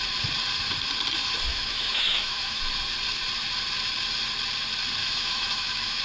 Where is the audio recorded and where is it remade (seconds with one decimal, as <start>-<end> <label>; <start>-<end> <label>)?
0.0-1.5 recorded; 1.5-2.6 remade; 2.6-5.0 recorded; 5.0-6.0 remade